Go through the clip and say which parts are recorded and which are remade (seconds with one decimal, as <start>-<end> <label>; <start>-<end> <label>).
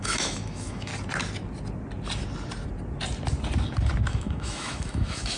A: 0.0-0.9 remade; 0.9-4.1 recorded; 4.1-5.4 remade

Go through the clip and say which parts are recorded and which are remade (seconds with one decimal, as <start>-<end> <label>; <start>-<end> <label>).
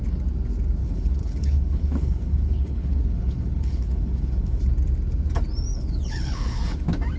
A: 0.0-0.8 recorded; 0.8-4.6 remade; 4.6-5.7 recorded; 5.7-6.6 remade; 6.6-7.2 recorded